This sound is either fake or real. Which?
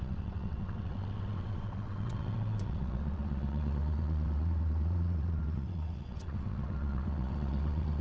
fake